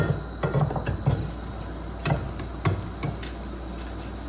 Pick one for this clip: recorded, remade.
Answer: recorded